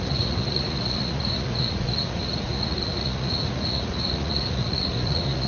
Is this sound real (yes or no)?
no